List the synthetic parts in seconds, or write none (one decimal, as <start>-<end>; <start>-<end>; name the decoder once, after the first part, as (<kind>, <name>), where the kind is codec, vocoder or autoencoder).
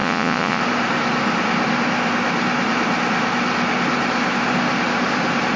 0.0-0.6 (vocoder, Vocos)